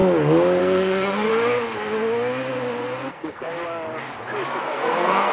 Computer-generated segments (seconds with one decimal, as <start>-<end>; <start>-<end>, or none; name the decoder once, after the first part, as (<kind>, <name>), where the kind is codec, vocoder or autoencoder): 0.6-1.3 (codec, SNAC); 3.1-3.5; 4.6-5.3